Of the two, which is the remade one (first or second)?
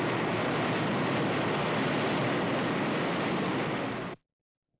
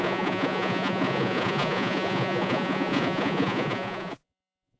second